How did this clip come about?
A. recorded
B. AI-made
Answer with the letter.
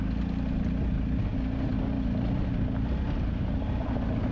A